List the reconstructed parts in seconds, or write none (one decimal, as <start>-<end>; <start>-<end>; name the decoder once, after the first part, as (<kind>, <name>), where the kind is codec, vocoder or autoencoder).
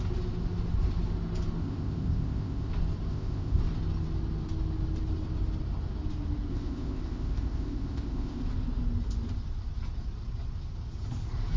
1.6-2.7 (codec, ZipCodec); 3.1-3.6; 6.5-8.4